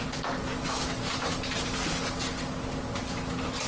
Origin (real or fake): real